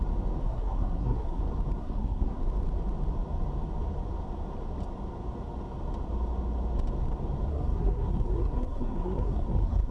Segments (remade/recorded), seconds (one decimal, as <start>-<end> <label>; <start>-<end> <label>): 0.0-0.4 recorded; 0.4-1.4 remade; 1.4-1.8 recorded; 1.8-2.4 remade; 2.4-7.5 recorded; 7.5-9.9 remade